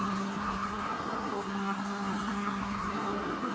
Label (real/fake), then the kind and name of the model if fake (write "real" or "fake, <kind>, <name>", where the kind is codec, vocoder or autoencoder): fake, codec, SNAC